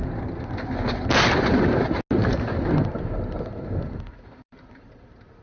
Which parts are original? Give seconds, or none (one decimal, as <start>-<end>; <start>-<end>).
0.0-2.2